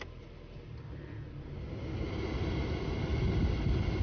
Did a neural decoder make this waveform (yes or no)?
no